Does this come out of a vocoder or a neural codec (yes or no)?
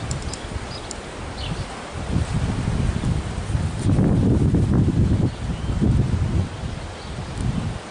no